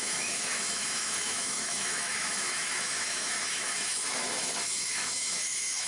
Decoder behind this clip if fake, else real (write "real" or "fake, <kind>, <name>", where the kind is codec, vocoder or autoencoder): fake, autoencoder, DAC-VAE